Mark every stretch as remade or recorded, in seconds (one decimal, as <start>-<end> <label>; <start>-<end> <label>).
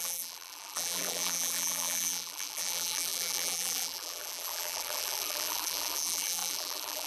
0.0-7.1 remade